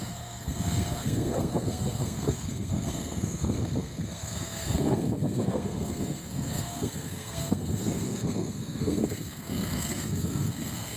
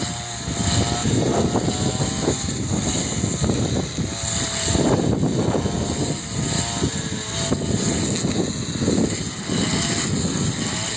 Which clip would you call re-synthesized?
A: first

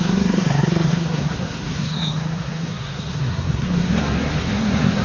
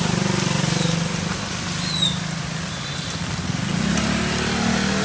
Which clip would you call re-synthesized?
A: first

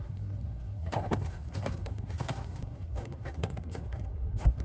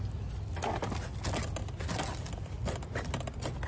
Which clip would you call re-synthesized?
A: first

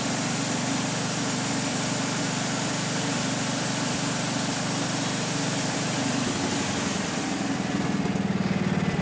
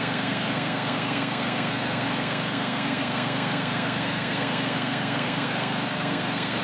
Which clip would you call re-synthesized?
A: second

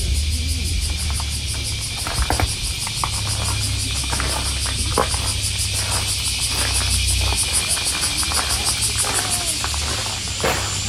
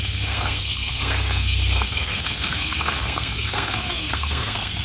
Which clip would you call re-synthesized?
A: second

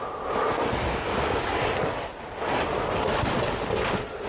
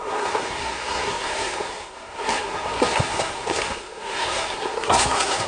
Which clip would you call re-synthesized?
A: second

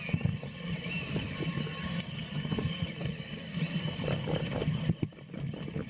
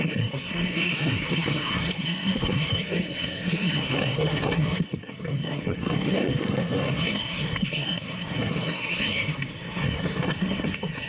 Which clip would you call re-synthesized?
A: second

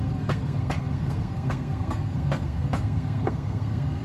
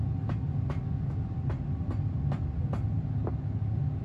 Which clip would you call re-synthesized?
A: first